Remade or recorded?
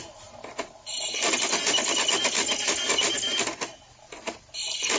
recorded